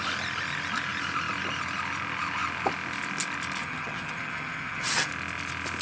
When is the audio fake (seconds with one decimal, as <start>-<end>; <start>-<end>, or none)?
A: 3.6-5.1

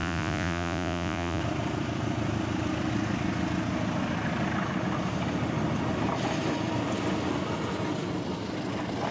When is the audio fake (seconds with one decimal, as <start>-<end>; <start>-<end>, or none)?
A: 0.0-1.4

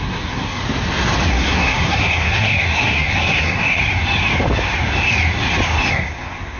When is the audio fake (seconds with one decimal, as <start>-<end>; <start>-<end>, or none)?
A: 0.0-0.6; 1.3-3.8; 5.9-6.6

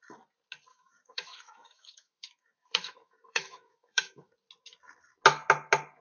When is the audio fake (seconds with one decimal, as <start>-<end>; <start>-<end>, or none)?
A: 0.7-4.3